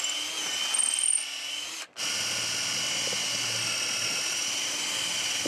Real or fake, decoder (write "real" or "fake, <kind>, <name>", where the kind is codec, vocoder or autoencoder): real